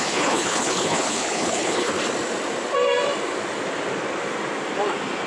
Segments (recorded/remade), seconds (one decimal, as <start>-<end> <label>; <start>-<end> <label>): 0.0-1.9 remade; 1.9-5.3 recorded